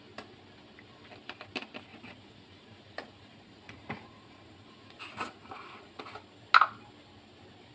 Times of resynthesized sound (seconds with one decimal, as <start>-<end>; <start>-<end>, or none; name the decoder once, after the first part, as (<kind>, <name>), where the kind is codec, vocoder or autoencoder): 1.9-6.0 (vocoder, Vocos)